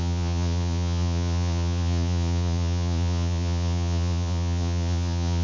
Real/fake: fake